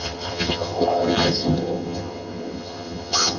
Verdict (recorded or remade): remade